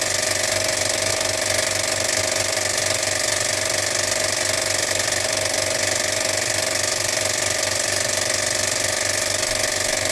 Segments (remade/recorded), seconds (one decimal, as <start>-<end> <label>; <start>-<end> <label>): 0.0-10.1 recorded